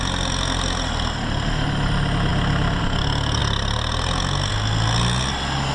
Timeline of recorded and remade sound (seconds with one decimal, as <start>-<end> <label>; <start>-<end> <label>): 0.0-5.7 recorded